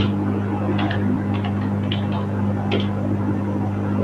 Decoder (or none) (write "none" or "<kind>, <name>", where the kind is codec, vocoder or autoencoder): none